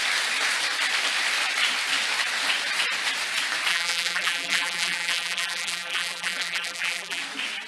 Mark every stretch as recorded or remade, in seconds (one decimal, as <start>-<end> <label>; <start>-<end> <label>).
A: 0.0-3.7 recorded; 3.7-7.2 remade; 7.2-7.7 recorded